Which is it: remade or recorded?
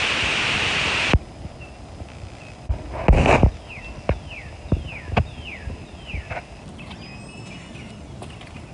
recorded